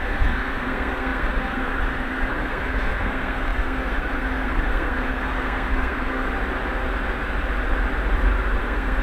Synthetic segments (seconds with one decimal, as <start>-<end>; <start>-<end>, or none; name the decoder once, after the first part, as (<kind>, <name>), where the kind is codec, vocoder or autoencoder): 0.0-6.3 (codec, SNAC); 8.6-9.0